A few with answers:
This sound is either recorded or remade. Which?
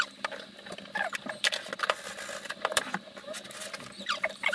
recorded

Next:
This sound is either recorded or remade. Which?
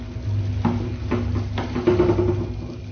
recorded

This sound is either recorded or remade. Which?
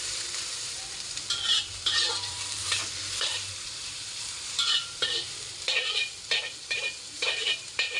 remade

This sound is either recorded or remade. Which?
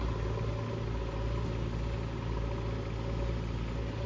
recorded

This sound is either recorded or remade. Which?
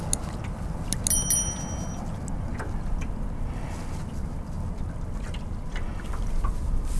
recorded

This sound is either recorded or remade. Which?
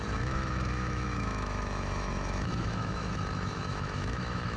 remade